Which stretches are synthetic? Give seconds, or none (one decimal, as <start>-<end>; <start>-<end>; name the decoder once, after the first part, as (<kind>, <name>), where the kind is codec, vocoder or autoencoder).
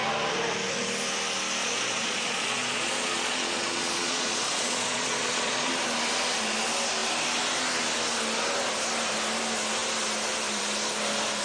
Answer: 1.6-5.7 (vocoder, Vocos)